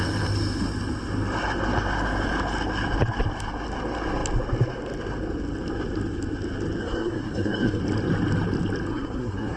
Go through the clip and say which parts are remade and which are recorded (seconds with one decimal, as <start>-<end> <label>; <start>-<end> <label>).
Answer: 0.0-6.8 recorded; 6.8-7.8 remade; 7.8-8.9 recorded; 8.9-9.6 remade